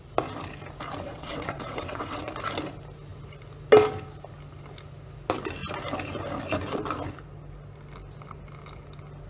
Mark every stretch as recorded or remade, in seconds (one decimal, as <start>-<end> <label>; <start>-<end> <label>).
0.0-1.1 recorded; 1.1-2.3 remade; 2.3-9.3 recorded